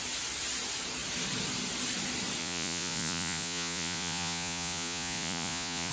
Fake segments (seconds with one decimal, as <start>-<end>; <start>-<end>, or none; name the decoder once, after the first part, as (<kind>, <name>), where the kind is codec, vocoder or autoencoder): 2.4-5.9 (vocoder, Vocos)